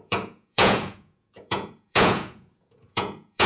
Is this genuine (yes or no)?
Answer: no